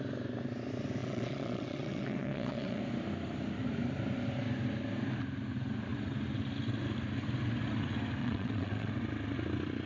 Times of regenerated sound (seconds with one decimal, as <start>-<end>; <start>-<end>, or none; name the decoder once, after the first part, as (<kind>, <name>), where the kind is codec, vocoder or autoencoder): 1.0-2.8 (vocoder, WaveNeXt); 8.2-8.9